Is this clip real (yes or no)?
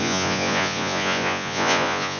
no